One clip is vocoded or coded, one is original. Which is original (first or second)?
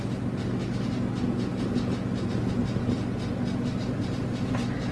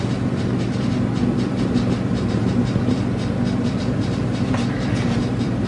first